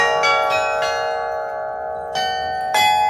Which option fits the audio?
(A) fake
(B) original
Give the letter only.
B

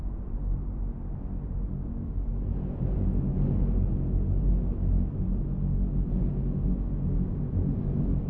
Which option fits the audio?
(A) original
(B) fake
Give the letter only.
A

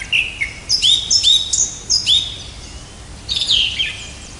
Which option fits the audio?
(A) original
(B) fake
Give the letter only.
A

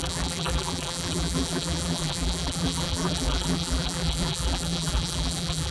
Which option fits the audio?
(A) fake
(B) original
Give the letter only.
A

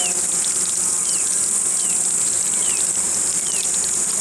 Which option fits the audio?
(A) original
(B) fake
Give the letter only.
A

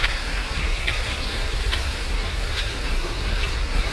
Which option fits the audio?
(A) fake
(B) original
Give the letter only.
A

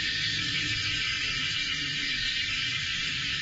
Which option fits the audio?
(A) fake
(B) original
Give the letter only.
A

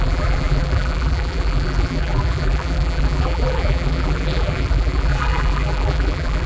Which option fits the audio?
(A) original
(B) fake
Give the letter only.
B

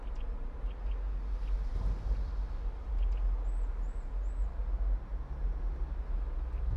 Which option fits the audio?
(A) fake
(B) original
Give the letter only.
B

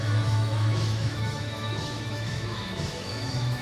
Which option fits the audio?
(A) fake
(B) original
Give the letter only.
A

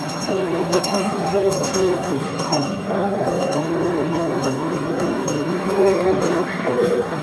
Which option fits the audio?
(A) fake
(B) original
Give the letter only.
A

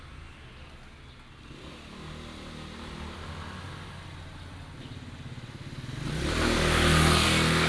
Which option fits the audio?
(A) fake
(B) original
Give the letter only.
B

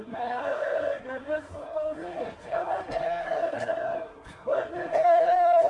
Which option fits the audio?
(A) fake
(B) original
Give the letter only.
A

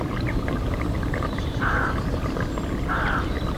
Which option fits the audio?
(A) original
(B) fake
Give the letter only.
A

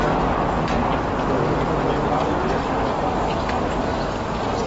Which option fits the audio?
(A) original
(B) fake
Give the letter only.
A